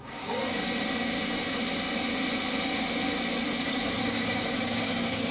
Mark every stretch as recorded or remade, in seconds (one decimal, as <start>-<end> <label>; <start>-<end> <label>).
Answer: 0.0-0.4 remade; 0.4-3.6 recorded; 3.6-5.3 remade